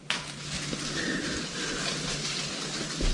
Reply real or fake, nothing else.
real